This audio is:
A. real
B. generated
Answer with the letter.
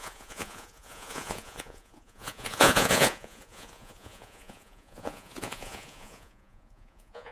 B